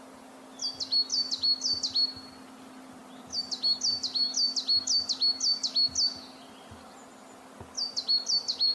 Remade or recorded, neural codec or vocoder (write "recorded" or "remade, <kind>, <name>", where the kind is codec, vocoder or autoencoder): recorded